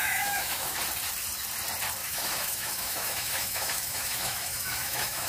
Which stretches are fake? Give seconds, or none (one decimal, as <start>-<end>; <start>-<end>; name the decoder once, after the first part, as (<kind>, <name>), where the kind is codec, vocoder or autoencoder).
0.0-0.8 (autoencoder, DAC-VAE); 2.0-5.3